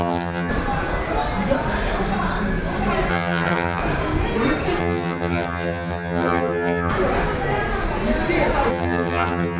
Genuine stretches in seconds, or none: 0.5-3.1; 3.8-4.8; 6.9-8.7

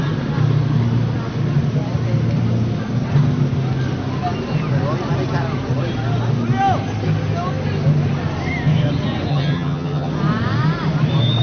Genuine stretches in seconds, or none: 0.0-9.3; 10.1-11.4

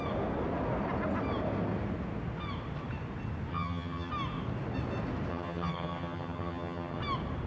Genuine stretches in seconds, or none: 0.0-3.5; 4.1-5.3; 7.0-7.5

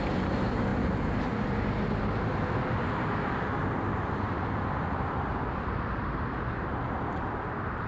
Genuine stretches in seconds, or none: 0.0-7.9

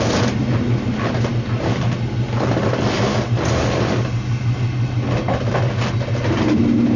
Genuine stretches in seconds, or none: 0.0-7.0